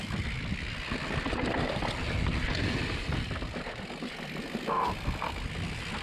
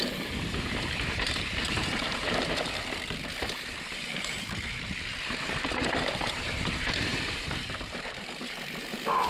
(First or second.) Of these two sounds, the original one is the first